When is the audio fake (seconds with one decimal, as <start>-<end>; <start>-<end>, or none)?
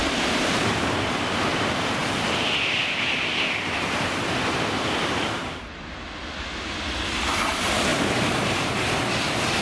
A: 0.0-1.1; 7.9-8.7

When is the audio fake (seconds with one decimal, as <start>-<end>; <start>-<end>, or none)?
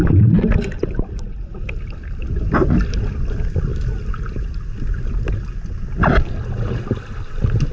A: 3.7-5.4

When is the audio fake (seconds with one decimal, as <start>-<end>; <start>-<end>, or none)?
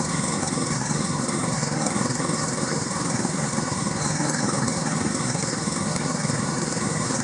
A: 0.0-7.2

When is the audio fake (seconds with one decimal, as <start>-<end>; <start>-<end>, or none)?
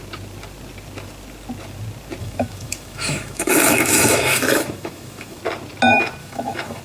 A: 2.2-5.4; 6.2-6.8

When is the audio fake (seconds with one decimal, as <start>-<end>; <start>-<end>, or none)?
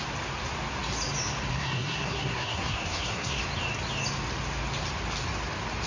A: 1.5-3.4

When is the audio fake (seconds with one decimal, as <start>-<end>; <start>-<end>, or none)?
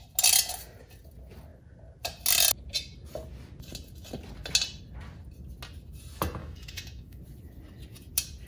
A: 6.4-7.2